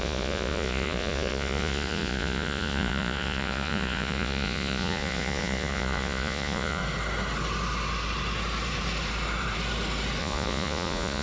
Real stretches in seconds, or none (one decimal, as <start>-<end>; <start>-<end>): 6.8-10.2